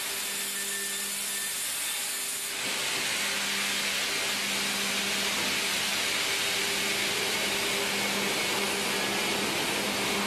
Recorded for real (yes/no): yes